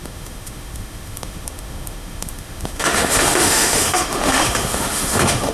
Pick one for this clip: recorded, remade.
remade